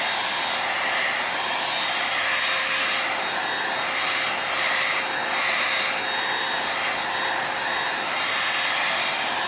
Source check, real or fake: real